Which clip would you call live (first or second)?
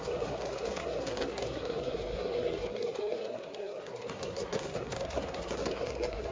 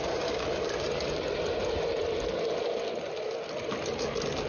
second